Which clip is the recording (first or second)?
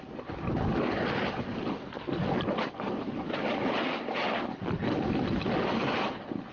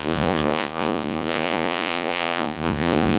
first